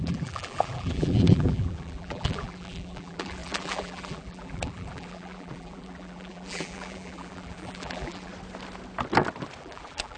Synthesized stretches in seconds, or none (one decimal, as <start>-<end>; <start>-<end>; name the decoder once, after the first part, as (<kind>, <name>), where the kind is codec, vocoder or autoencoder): 0.0-8.3 (vocoder, BigVGAN v2); 9.6-10.2